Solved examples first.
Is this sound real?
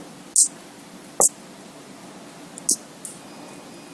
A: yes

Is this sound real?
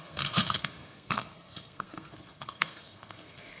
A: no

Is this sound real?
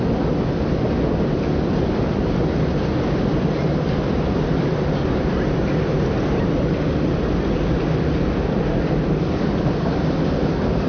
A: yes